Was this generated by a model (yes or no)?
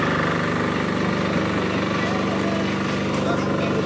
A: no